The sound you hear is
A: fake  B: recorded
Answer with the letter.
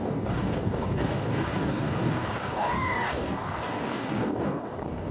A